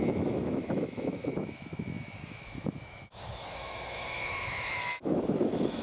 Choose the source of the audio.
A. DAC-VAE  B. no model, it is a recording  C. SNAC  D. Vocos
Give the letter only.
A